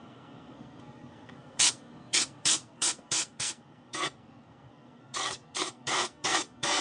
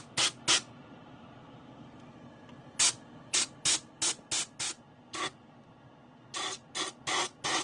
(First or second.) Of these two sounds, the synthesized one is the first